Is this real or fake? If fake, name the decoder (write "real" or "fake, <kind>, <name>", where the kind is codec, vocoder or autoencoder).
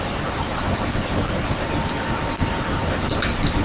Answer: real